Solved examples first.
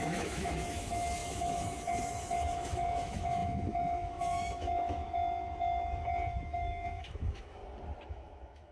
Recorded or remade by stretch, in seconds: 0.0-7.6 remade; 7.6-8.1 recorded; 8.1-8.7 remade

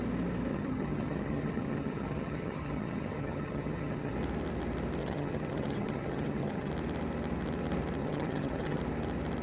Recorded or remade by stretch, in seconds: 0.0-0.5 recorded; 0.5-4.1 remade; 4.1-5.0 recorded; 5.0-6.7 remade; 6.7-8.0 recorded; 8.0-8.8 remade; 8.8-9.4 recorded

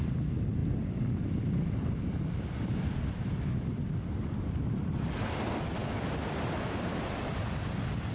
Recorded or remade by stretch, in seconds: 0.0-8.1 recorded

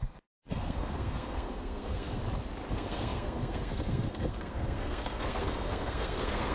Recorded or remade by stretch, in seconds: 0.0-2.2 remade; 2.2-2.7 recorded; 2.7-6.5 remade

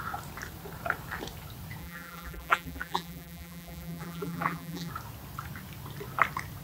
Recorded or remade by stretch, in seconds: 0.0-1.8 recorded; 1.8-4.9 remade; 4.9-6.6 recorded